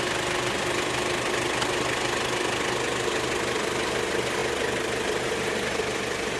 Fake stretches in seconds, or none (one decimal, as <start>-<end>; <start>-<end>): none